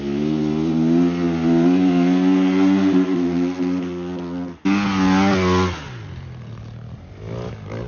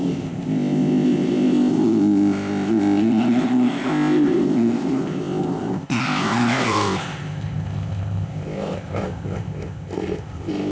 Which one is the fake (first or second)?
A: second